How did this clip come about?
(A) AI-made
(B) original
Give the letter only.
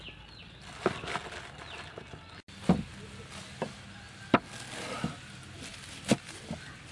B